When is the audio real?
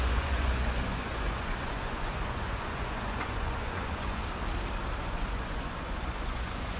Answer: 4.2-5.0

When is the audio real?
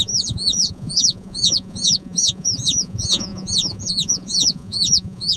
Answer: none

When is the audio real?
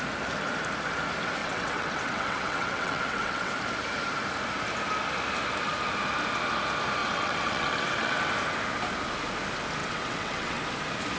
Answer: 0.0-1.4; 3.5-7.0; 8.3-9.8; 10.6-11.2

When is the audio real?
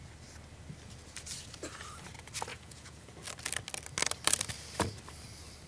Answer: 0.0-2.5; 3.1-5.7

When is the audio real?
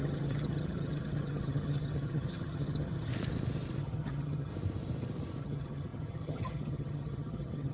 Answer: 3.1-3.8; 4.5-5.4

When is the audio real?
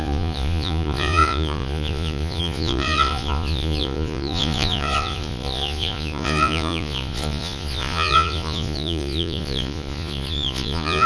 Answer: none